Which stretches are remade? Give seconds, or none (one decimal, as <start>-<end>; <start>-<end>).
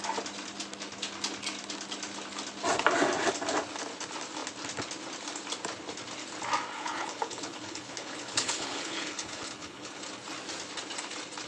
6.7-10.0